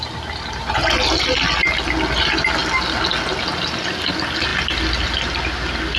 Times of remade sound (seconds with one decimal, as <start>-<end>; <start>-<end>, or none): none